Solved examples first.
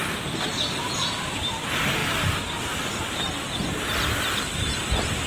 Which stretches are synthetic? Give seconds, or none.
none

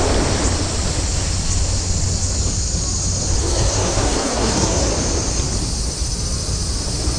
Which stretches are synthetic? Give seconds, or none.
3.4-4.9 (codec, SNAC)

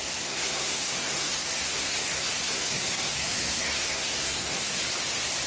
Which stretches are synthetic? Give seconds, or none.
0.0-4.8 (codec, SNAC)

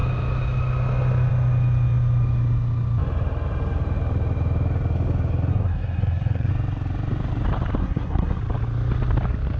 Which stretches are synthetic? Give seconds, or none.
5.5-6.5 (codec, SNAC); 7.8-8.4

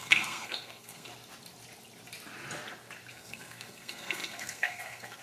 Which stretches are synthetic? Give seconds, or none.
0.0-1.1 (codec, SNAC); 3.1-5.2

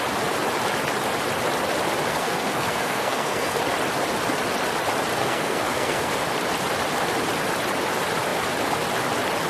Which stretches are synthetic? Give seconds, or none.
2.1-3.6 (codec, SNAC); 5.2-6.1